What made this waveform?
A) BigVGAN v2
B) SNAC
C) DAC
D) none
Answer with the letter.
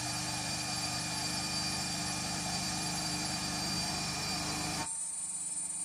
A